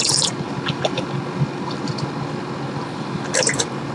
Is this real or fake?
real